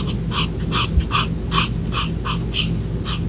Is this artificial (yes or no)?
no